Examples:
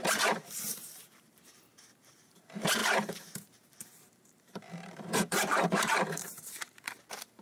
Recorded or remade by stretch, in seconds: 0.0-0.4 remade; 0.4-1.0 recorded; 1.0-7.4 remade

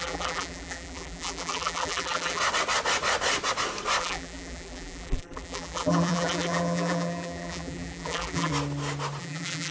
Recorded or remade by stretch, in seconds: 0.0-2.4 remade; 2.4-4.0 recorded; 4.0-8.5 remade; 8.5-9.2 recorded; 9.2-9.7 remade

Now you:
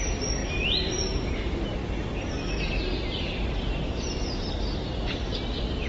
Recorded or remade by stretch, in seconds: 0.0-0.4 remade; 0.4-1.1 recorded; 1.1-1.8 remade; 1.8-2.9 recorded; 2.9-5.9 remade

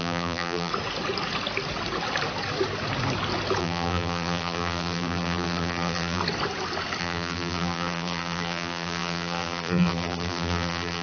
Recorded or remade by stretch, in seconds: 0.0-0.7 remade; 0.7-3.6 recorded; 3.6-6.2 remade; 6.2-7.0 recorded; 7.0-11.0 remade

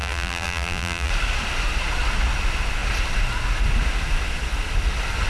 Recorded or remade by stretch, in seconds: 0.0-1.1 remade; 1.1-5.3 recorded

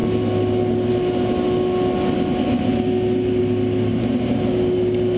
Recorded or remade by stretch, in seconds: 0.0-3.9 recorded; 3.9-4.4 remade; 4.4-5.2 recorded

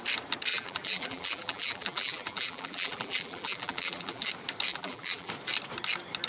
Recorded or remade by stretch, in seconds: 0.0-0.5 recorded; 0.5-4.3 remade; 4.3-4.7 recorded; 4.7-5.3 remade; 5.3-6.3 recorded